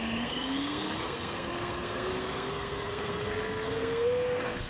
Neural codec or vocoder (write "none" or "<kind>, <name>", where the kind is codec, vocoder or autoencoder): codec, SNAC